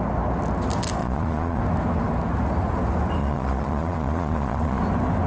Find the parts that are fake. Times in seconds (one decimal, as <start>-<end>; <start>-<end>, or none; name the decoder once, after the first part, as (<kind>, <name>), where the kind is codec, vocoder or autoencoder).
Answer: 1.0-1.6 (vocoder, Vocos); 3.2-4.8